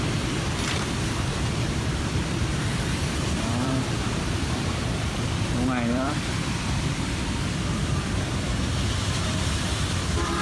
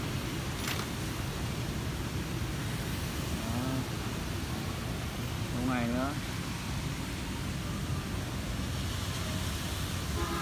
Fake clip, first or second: first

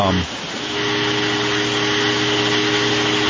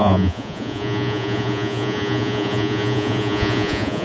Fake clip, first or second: second